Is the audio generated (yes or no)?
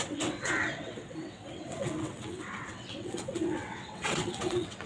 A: yes